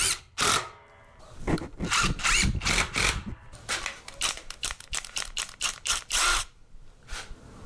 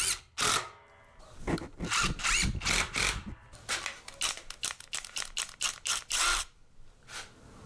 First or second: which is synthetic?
first